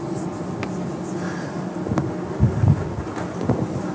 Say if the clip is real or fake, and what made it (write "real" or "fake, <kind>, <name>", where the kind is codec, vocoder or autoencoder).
real